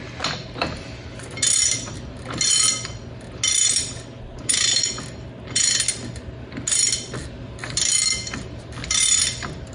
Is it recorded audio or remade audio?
recorded